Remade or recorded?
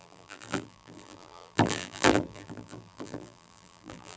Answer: remade